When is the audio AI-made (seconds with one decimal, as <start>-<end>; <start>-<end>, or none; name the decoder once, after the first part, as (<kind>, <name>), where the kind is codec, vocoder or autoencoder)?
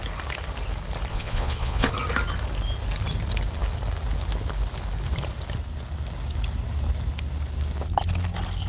1.1-1.9 (vocoder, Vocos)